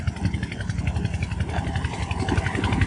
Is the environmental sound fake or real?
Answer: real